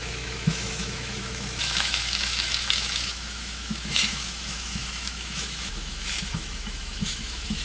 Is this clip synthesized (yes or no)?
yes